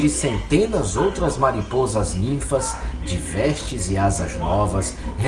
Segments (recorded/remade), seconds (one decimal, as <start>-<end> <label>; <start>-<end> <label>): 0.0-1.4 recorded; 1.4-2.7 remade; 2.7-5.3 recorded